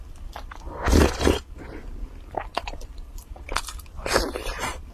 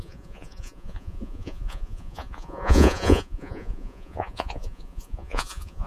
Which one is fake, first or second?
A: second